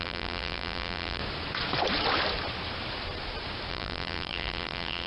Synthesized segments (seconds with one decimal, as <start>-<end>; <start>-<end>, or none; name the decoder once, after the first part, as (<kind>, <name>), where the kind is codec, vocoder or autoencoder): 0.0-1.2 (vocoder, BigVGAN v2); 3.7-5.1